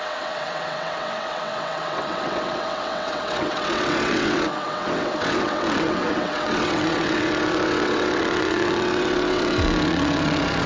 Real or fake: fake